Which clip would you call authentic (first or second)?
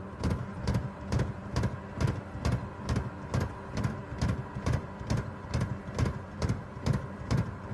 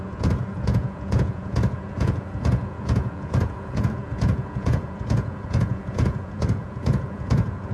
first